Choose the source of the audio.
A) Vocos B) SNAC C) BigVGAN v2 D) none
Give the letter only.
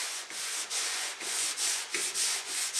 A